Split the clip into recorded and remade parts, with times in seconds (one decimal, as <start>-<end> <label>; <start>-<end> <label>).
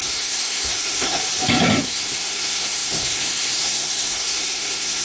0.0-1.2 remade; 1.2-1.8 recorded; 1.8-5.0 remade